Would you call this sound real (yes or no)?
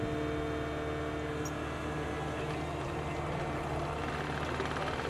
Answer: yes